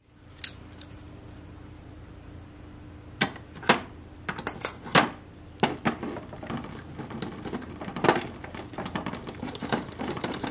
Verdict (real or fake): fake